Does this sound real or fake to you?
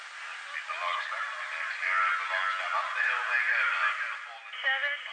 real